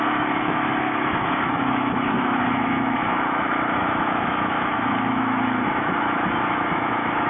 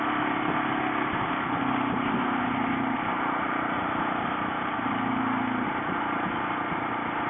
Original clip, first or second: second